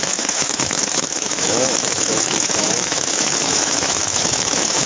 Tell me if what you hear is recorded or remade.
remade